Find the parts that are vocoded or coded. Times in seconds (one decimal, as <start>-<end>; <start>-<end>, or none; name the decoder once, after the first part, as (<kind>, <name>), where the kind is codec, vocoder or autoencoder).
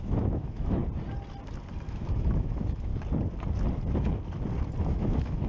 0.0-0.8 (autoencoder, DAC-VAE); 1.9-2.9; 4.8-5.5